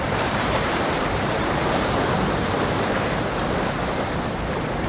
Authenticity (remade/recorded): remade